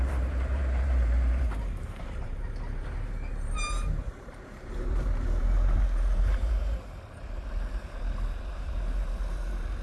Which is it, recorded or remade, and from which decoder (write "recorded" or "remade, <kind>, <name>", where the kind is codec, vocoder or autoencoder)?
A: remade, vocoder, BigVGAN v2